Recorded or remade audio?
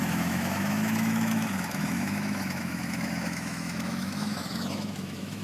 remade